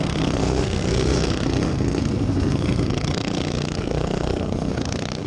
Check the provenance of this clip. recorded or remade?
remade